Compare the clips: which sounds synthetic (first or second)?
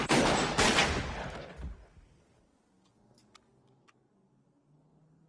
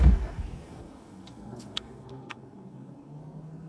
second